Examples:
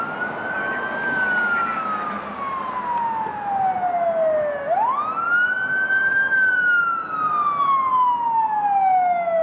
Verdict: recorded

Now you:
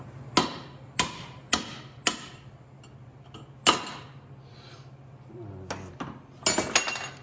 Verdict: recorded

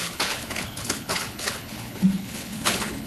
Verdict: remade